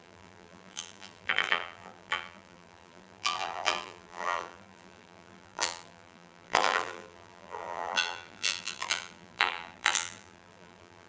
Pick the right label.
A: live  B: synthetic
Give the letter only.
B